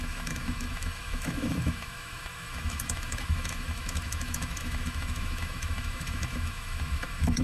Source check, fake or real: fake